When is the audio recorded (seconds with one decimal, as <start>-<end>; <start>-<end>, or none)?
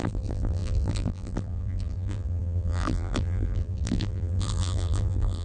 none